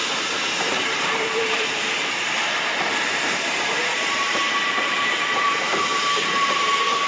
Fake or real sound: fake